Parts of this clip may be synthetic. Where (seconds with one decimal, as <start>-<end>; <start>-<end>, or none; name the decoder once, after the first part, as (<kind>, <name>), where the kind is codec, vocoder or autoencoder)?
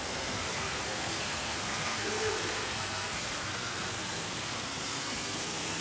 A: 0.0-5.8 (codec, SNAC)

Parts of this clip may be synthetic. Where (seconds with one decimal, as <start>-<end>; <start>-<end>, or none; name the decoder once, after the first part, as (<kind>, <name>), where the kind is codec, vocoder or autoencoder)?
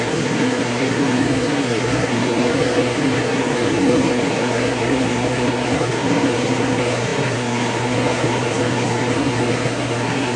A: 0.0-10.4 (codec, SNAC)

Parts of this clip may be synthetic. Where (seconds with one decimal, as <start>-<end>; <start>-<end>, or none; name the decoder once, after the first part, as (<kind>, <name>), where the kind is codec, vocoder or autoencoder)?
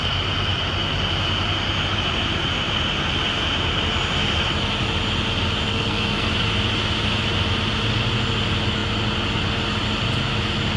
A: 5.7-6.3 (codec, SNAC)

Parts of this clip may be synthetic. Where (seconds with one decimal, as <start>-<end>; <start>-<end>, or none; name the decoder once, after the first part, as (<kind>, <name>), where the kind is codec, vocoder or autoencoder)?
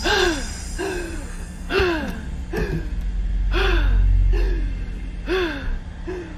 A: 1.3-1.8 (codec, SNAC)